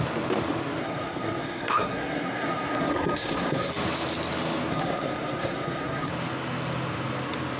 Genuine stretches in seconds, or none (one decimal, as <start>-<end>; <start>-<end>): 0.0-0.8; 3.7-4.7; 6.1-7.6